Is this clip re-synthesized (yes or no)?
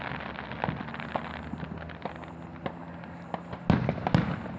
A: no